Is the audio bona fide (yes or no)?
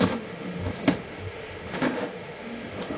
no